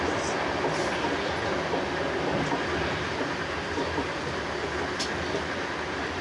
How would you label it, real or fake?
real